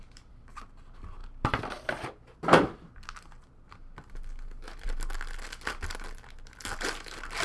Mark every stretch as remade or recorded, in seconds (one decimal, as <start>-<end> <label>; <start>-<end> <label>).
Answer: 0.0-7.4 recorded